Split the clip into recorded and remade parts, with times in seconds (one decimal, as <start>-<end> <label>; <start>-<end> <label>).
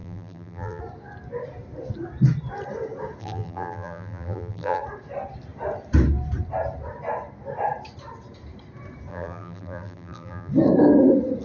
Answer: 0.0-0.8 remade; 0.8-3.2 recorded; 3.2-4.8 remade; 4.8-9.1 recorded; 9.1-10.5 remade; 10.5-11.4 recorded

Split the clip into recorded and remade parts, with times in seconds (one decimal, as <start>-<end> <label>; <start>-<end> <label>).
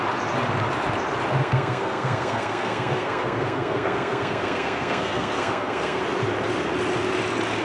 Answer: 0.0-1.4 recorded; 1.4-6.0 remade; 6.0-7.6 recorded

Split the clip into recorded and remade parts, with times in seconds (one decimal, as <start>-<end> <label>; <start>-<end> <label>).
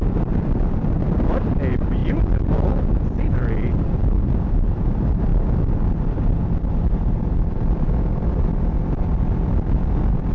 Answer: 0.0-10.3 recorded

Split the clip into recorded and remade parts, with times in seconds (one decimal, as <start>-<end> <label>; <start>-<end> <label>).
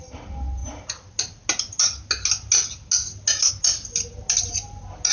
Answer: 0.0-5.1 recorded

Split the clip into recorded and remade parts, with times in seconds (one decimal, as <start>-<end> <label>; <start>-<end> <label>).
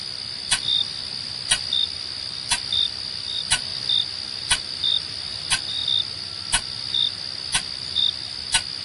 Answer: 0.0-3.7 remade; 3.7-4.5 recorded; 4.5-5.8 remade; 5.8-8.8 recorded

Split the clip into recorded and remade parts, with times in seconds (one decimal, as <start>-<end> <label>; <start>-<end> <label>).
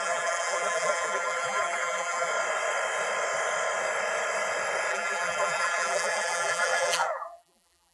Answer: 0.0-2.3 remade; 2.3-4.9 recorded; 4.9-7.9 remade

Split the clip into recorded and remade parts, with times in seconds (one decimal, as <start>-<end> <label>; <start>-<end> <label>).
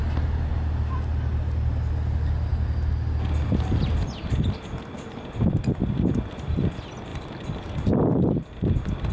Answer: 0.0-9.1 recorded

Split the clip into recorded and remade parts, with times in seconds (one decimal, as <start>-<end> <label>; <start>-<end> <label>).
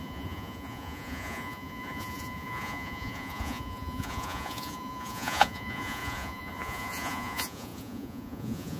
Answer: 0.0-8.8 remade